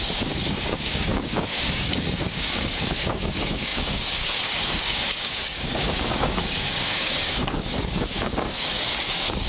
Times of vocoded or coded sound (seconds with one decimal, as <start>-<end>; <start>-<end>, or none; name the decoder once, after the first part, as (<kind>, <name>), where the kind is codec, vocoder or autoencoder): 0.0-9.5 (codec, DAC)